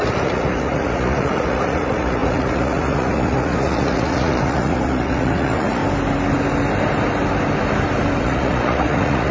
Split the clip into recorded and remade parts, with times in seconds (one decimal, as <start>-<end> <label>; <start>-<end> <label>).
0.0-5.8 remade; 5.8-8.2 recorded; 8.2-9.3 remade